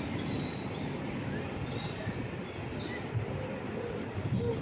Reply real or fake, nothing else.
real